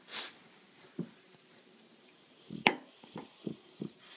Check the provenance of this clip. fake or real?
real